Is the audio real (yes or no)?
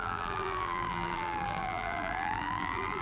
no